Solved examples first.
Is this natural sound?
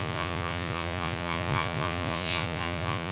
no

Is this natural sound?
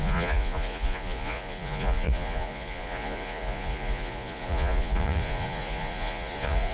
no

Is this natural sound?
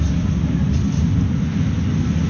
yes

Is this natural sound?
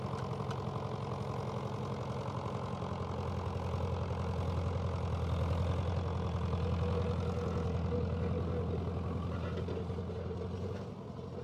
yes